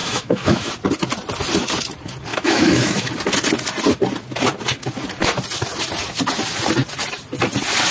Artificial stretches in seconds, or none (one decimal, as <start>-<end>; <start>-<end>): 0.0-0.7; 2.3-3.1